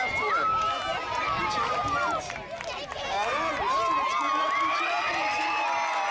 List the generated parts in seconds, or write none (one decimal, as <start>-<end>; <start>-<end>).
none